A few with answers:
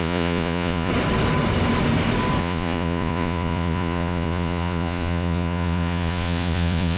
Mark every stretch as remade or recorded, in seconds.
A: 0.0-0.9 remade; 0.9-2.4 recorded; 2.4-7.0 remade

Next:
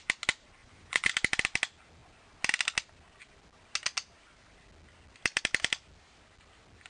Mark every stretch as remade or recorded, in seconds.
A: 0.0-0.6 recorded; 0.6-1.1 remade; 1.1-6.9 recorded

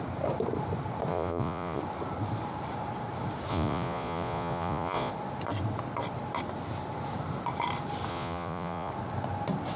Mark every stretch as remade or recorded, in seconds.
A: 0.0-1.1 recorded; 1.1-1.8 remade; 1.8-3.5 recorded; 3.5-5.1 remade; 5.1-8.1 recorded; 8.1-8.9 remade; 8.9-9.8 recorded

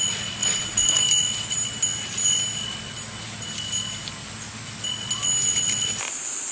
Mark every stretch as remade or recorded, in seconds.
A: 0.0-0.4 recorded; 0.4-1.0 remade; 1.0-6.5 recorded

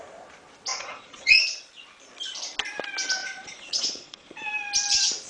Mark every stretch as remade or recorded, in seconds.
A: 0.0-0.7 recorded; 0.7-1.4 remade; 1.4-3.2 recorded; 3.2-4.5 remade; 4.5-5.3 recorded

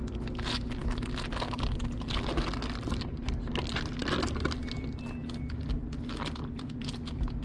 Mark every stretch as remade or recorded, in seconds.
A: 0.0-7.4 recorded

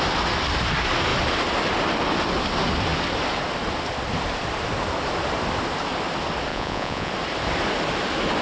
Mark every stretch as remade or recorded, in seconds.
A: 0.0-6.5 recorded; 6.5-7.1 remade; 7.1-8.4 recorded

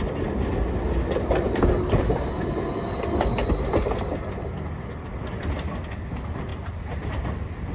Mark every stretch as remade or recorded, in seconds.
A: 0.0-7.7 recorded